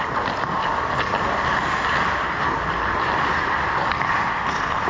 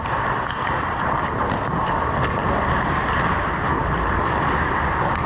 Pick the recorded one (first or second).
first